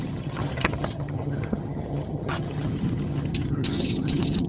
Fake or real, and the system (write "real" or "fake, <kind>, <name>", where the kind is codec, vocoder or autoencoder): fake, vocoder, HiFi-GAN